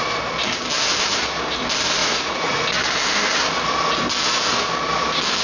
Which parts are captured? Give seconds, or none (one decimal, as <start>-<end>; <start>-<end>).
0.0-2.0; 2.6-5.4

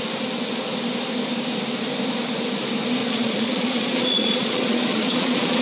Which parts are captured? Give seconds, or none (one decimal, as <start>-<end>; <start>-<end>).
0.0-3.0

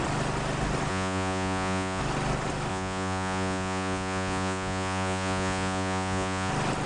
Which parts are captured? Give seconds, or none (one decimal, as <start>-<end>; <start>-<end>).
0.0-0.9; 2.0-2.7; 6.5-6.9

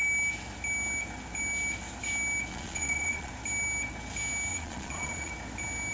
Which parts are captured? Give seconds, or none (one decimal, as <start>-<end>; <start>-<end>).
0.0-2.5; 3.3-4.5; 5.3-5.9